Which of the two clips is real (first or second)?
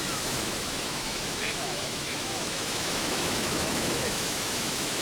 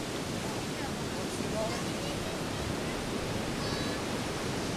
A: second